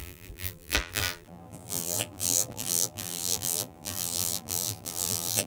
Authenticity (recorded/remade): remade